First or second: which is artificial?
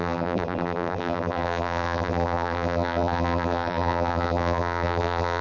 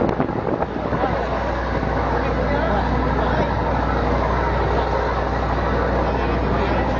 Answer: first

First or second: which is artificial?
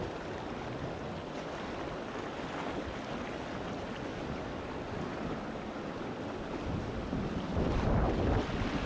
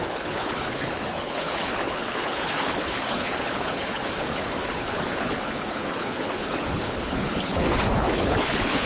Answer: second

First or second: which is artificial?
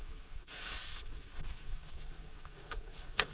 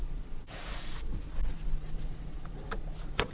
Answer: first